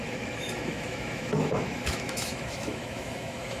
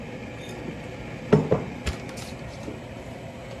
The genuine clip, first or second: second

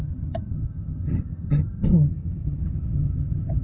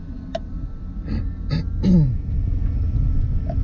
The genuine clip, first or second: second